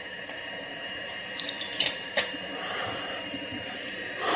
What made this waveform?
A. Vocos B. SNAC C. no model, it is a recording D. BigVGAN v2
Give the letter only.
D